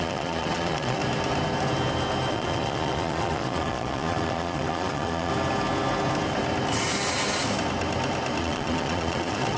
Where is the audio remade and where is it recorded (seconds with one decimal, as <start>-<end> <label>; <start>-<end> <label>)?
0.0-1.0 remade; 1.0-2.3 recorded; 2.3-5.3 remade; 5.3-8.4 recorded; 8.4-9.6 remade

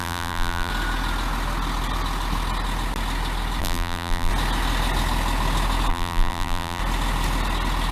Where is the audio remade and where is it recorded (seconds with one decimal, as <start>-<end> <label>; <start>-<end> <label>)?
0.0-0.7 remade; 0.7-3.6 recorded; 3.6-4.3 remade; 4.3-5.9 recorded; 5.9-6.8 remade; 6.8-7.9 recorded

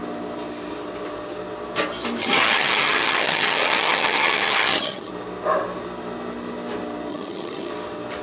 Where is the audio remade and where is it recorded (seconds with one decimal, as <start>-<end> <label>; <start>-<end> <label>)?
0.0-2.2 recorded; 2.2-5.1 remade; 5.1-7.1 recorded; 7.1-7.7 remade; 7.7-8.2 recorded

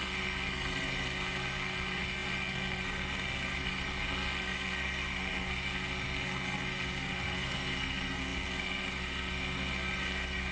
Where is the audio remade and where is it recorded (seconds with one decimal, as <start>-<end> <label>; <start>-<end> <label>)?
0.0-10.5 remade

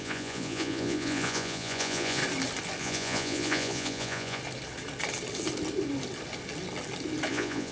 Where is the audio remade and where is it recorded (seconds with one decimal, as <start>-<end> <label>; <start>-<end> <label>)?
0.0-2.2 remade; 2.2-2.8 recorded; 2.8-4.4 remade; 4.4-7.3 recorded; 7.3-7.7 remade

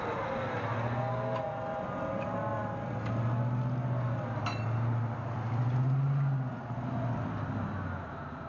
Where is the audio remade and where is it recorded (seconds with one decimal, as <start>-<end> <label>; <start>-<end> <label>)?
0.0-8.5 recorded

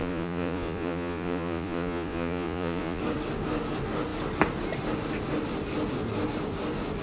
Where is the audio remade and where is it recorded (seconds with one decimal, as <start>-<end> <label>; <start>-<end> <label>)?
0.0-3.0 remade; 3.0-7.0 recorded